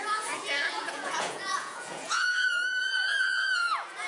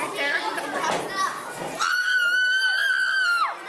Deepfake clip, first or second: first